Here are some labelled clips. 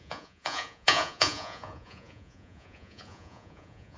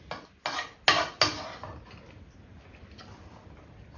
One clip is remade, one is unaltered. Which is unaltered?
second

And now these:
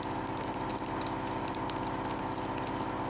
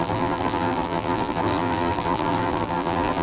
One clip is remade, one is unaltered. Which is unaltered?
first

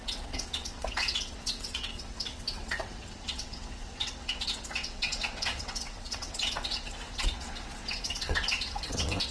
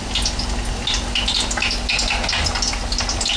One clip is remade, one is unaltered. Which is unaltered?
second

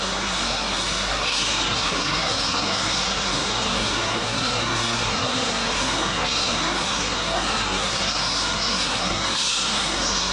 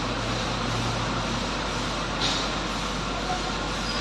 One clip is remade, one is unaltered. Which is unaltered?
second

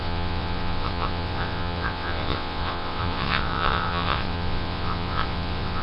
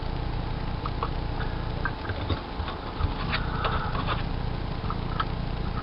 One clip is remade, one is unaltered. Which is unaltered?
second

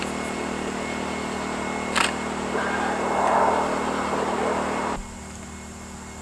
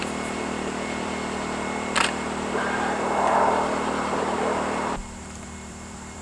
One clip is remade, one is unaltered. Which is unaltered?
first